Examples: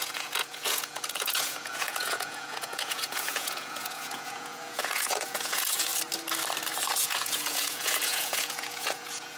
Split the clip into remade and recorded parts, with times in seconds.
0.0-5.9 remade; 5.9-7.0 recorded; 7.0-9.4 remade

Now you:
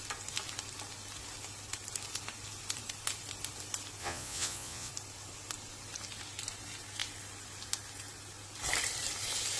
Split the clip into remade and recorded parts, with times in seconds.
0.0-4.0 recorded; 4.0-4.9 remade; 4.9-9.6 recorded

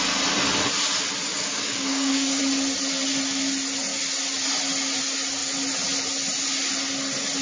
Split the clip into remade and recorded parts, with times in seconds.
0.0-1.3 recorded; 1.3-2.4 remade; 2.4-7.4 recorded

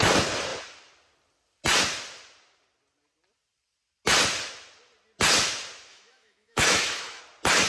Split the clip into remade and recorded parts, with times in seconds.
0.0-5.9 recorded; 5.9-7.2 remade; 7.2-7.7 recorded

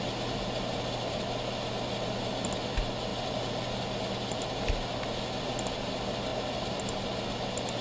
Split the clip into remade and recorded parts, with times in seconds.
0.0-7.8 recorded

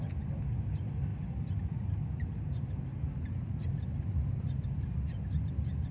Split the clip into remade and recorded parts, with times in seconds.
0.0-5.9 recorded

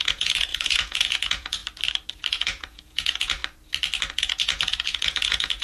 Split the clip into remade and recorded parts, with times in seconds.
0.0-1.6 remade; 1.6-2.3 recorded; 2.3-3.4 remade; 3.4-4.1 recorded; 4.1-5.6 remade

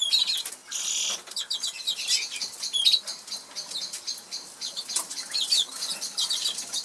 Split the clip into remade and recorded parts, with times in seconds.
0.0-6.8 recorded